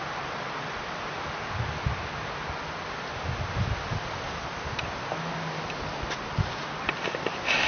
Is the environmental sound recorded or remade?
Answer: recorded